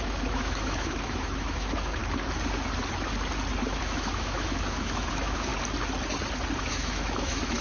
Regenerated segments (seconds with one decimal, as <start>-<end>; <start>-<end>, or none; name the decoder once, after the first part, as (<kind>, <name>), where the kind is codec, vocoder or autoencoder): 0.0-2.0 (autoencoder, DAC-VAE); 3.8-5.5; 6.6-7.6